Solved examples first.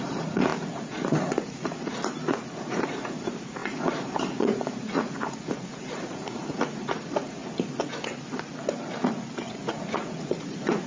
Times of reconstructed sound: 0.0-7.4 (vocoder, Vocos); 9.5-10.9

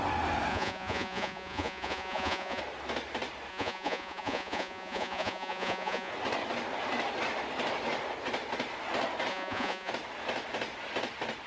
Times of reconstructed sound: 0.5-2.6 (vocoder, Vocos); 3.5-6.1; 9.3-9.9

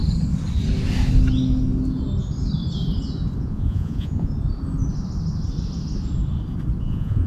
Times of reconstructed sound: 3.4-4.3 (vocoder, Vocos); 6.8-7.3

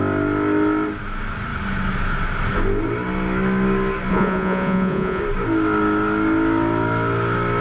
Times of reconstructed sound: 4.1-5.2 (vocoder, Vocos)

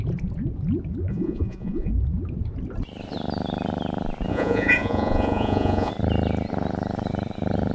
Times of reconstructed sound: 1.1-1.9 (vocoder, Vocos); 4.3-5.9

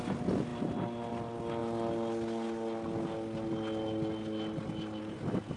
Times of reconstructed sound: none